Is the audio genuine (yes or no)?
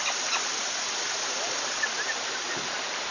yes